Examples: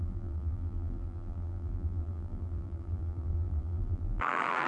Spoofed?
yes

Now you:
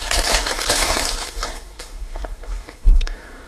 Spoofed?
yes